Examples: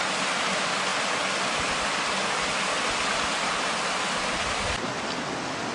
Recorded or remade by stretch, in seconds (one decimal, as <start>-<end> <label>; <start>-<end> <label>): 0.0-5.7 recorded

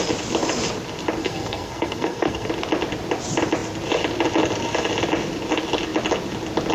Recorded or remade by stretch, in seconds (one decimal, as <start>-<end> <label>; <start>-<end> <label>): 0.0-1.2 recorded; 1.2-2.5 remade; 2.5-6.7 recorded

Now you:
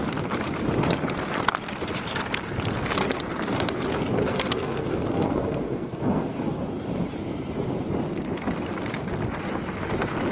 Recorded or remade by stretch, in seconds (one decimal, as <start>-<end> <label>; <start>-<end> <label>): 0.0-4.2 recorded; 4.2-6.6 remade; 6.6-10.3 recorded

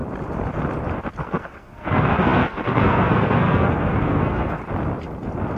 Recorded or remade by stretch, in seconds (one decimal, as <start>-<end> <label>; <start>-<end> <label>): 0.0-1.2 recorded; 1.2-4.6 remade; 4.6-5.6 recorded

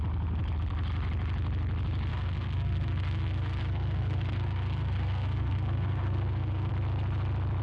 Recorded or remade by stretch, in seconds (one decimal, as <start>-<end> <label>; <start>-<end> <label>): 0.0-2.1 recorded; 2.1-6.7 remade; 6.7-7.6 recorded